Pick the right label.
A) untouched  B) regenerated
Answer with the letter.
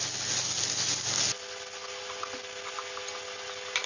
A